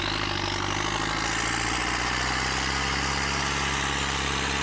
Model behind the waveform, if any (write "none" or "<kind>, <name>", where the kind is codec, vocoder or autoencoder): none